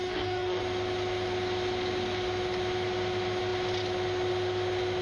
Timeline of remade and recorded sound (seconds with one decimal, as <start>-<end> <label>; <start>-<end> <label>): 0.0-0.6 remade; 0.6-5.0 recorded